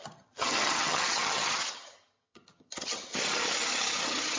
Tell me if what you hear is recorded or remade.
remade